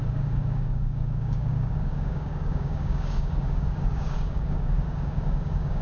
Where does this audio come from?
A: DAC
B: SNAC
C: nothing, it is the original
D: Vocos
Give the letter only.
A